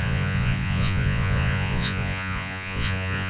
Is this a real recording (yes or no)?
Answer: no